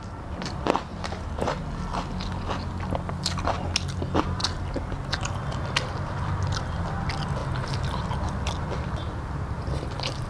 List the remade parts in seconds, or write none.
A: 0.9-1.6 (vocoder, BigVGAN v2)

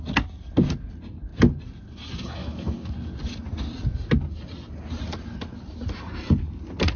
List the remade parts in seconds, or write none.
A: 2.4-2.9 (autoencoder, DAC-VAE)

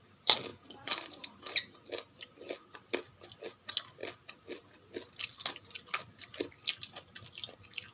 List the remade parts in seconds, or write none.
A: 0.5-1.8 (vocoder, BigVGAN v2)